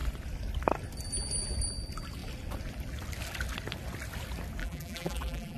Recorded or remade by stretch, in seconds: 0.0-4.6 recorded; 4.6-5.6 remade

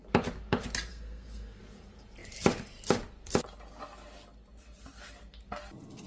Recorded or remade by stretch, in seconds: 0.0-0.9 recorded; 0.9-1.6 remade; 1.6-6.1 recorded